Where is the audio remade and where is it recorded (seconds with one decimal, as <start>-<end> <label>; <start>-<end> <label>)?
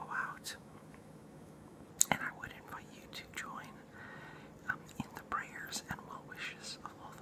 0.0-1.9 remade; 1.9-7.2 recorded